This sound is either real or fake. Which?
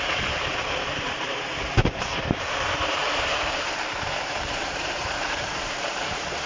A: fake